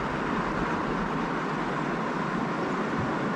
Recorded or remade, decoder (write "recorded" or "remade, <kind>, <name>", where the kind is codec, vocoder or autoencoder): recorded